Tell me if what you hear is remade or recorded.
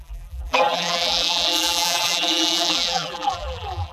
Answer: remade